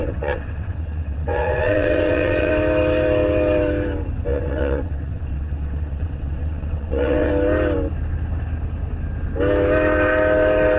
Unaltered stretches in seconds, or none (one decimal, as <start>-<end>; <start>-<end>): 2.5-4.3; 7.3-10.8